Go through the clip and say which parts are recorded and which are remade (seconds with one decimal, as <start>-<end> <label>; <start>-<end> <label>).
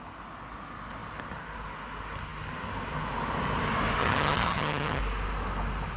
0.0-4.0 recorded; 4.0-5.0 remade; 5.0-6.0 recorded